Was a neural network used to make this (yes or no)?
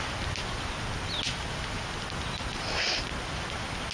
no